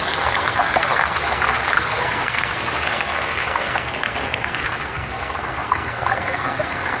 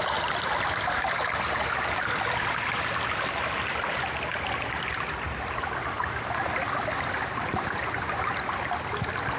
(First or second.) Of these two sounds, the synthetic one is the first